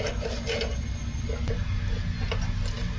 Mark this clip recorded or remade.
recorded